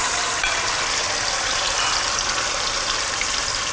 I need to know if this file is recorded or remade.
recorded